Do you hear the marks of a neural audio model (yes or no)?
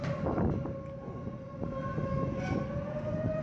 no